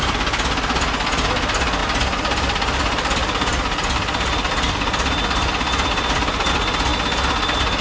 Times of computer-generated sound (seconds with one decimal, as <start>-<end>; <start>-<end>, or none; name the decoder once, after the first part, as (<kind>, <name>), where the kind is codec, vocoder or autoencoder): 1.8-6.5 (vocoder, BigVGAN v2)